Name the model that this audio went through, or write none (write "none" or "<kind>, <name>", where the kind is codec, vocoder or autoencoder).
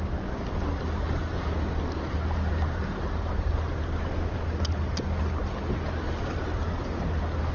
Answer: none